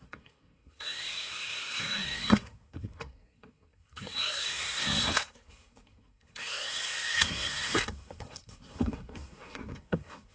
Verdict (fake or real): fake